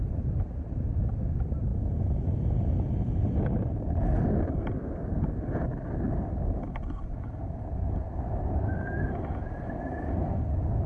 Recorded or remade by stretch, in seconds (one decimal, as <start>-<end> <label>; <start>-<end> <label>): 0.0-10.9 recorded